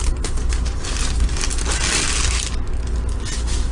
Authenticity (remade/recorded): recorded